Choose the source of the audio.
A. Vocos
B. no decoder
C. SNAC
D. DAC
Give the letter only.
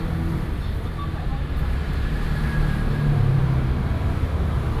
B